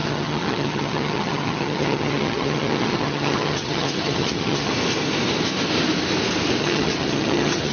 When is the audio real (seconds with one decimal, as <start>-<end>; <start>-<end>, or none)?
4.7-6.6